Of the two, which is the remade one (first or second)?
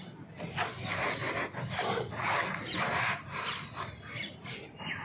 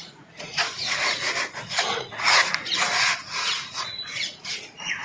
second